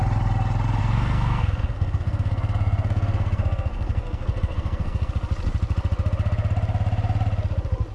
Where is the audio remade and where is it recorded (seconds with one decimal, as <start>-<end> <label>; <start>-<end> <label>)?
0.0-0.8 recorded; 0.8-5.1 remade; 5.1-7.9 recorded